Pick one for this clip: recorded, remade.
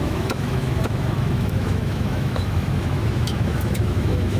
remade